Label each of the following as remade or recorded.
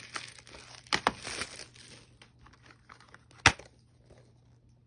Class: recorded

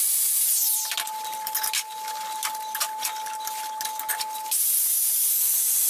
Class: recorded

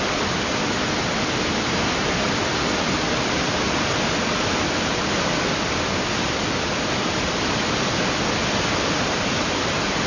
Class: recorded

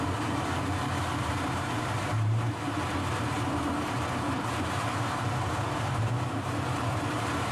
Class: remade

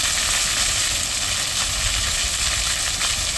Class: recorded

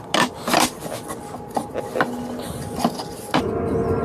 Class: recorded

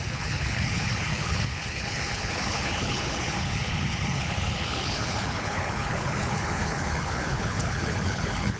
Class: remade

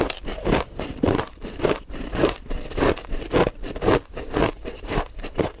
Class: remade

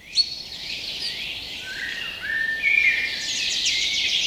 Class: recorded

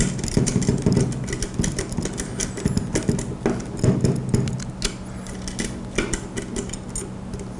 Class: recorded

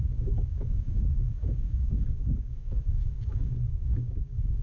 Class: remade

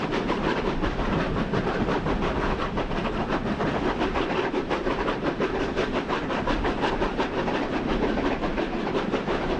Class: remade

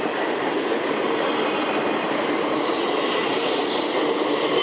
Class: recorded